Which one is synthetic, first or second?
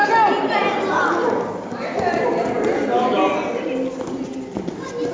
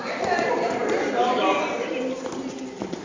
second